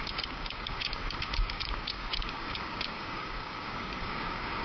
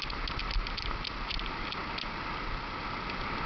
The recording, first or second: second